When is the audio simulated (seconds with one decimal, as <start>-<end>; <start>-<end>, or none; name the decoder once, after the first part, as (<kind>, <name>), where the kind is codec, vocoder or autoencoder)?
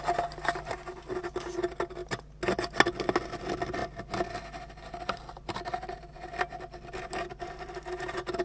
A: none